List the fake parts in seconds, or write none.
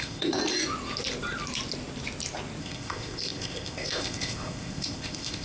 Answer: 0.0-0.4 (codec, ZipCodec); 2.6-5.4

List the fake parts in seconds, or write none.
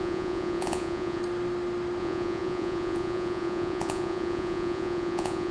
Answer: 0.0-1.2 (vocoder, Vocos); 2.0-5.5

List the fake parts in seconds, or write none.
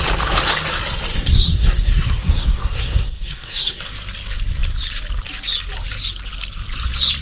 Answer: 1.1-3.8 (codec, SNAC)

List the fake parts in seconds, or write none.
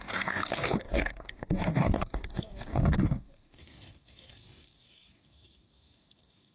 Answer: 0.0-6.5 (codec, DAC)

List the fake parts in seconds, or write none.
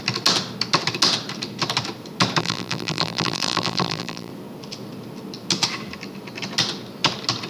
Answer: 2.4-4.3 (vocoder, BigVGAN v2)